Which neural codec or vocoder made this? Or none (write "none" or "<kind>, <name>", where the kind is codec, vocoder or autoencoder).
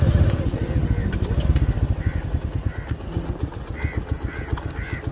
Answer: none